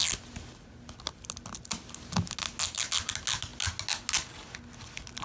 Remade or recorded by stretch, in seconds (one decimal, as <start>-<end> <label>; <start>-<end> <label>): 0.0-5.2 recorded